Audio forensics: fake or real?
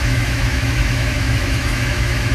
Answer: fake